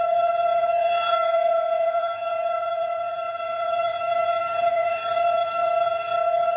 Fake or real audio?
fake